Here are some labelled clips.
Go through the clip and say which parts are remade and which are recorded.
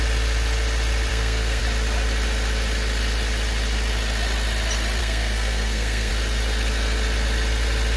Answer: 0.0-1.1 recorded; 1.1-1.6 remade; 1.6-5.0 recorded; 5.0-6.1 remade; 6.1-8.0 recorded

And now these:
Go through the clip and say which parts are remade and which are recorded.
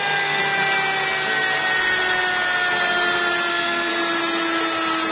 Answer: 0.0-0.4 remade; 0.4-3.5 recorded; 3.5-3.9 remade; 3.9-5.1 recorded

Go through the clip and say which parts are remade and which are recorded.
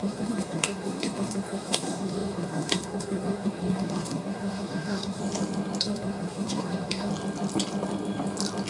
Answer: 0.0-5.2 remade; 5.2-5.8 recorded; 5.8-7.1 remade; 7.1-8.7 recorded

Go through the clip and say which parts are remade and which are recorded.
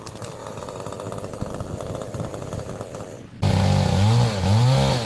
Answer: 0.0-5.1 recorded